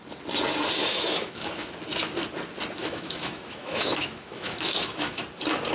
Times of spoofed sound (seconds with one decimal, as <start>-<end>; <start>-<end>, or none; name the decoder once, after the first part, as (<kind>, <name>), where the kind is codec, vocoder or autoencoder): 0.9-1.7 (autoencoder, DAC-VAE); 2.8-5.2